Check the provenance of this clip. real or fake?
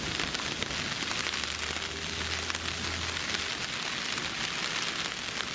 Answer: real